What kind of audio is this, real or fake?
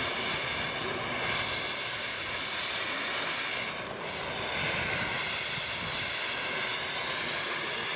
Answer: real